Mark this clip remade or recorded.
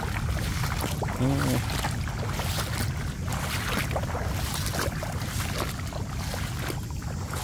recorded